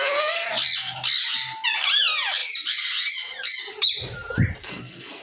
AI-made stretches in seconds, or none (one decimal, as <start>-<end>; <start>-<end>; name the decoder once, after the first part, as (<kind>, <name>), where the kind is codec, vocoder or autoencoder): 4.6-5.2 (codec, SNAC)